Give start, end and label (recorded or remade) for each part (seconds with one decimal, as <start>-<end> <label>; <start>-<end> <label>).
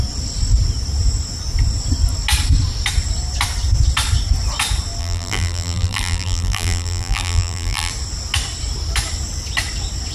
0.0-5.0 recorded; 5.0-7.9 remade; 7.9-10.1 recorded